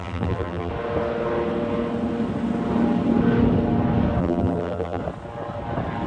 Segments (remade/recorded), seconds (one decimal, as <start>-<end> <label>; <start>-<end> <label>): 0.0-0.7 remade; 0.7-4.2 recorded; 4.2-5.0 remade; 5.0-6.1 recorded